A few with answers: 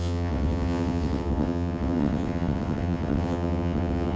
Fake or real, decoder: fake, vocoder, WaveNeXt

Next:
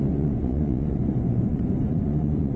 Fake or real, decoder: fake, vocoder, Vocos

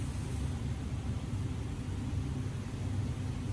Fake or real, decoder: real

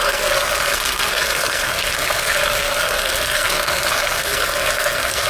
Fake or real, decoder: fake, codec, SNAC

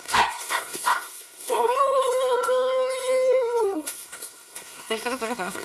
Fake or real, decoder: fake, codec, SNAC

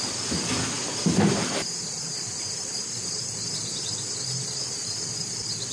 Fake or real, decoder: real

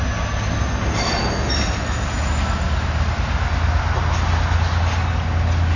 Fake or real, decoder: real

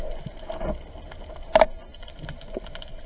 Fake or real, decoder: real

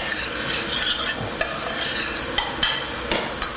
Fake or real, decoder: real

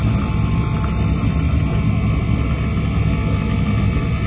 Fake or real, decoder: real